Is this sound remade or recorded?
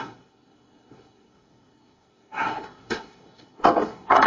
remade